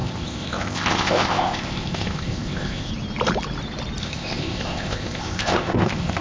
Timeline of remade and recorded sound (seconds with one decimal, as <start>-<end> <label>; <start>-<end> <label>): 0.0-2.9 remade; 2.9-4.0 recorded; 4.0-6.2 remade